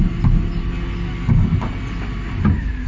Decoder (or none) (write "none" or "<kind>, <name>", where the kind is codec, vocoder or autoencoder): none